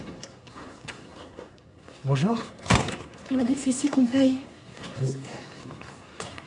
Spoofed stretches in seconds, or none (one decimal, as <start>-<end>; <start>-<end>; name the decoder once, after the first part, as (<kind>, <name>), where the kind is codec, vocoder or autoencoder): 0.0-6.5 (codec, SNAC)